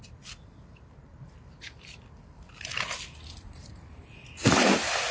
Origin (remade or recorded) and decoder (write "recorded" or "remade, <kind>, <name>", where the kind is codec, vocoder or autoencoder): remade, vocoder, BigVGAN v2